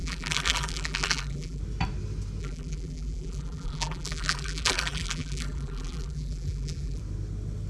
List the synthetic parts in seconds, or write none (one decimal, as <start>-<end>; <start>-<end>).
0.0-1.6; 2.4-7.0